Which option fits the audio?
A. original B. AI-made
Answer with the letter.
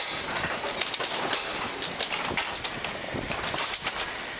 A